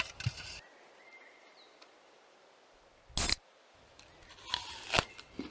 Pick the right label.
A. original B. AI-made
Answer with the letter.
A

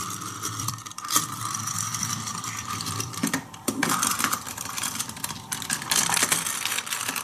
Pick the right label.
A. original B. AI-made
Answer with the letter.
B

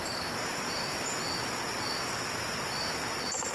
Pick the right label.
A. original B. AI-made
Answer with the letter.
B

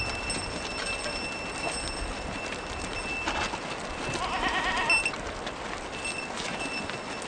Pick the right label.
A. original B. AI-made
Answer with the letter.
A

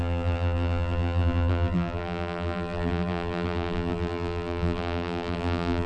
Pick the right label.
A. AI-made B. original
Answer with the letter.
A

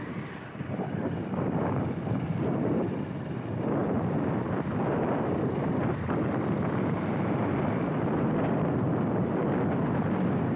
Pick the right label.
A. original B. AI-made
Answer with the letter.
B